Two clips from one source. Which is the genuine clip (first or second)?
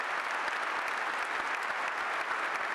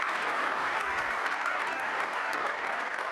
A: first